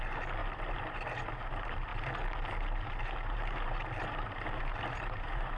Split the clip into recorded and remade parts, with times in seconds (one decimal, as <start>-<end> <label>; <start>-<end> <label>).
0.0-1.9 remade; 1.9-3.0 recorded; 3.0-5.6 remade